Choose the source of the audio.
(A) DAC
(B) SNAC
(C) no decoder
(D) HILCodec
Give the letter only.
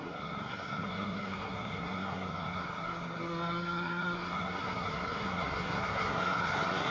B